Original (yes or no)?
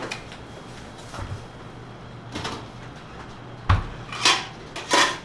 yes